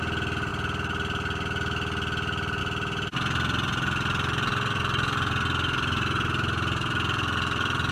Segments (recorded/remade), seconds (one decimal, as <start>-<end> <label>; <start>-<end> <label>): 0.0-7.9 recorded